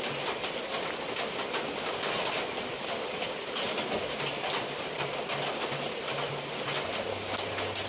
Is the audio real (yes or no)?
yes